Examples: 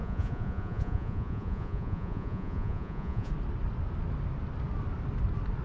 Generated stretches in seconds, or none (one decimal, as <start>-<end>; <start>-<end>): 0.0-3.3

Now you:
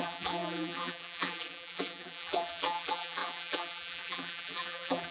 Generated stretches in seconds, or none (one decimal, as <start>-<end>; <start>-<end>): 0.0-5.1

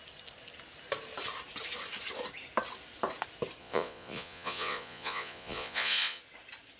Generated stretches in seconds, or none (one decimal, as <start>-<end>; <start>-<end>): 3.6-6.2